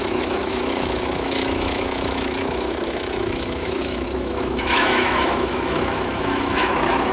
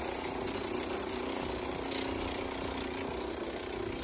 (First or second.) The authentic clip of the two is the second